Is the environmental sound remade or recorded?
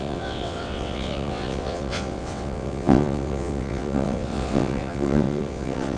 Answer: remade